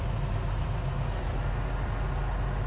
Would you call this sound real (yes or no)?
yes